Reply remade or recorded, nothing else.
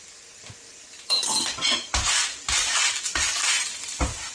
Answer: recorded